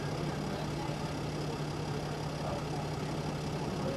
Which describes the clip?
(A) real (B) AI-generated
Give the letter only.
A